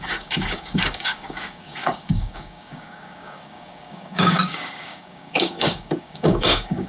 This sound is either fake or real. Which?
fake